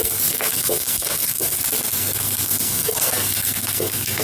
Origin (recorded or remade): remade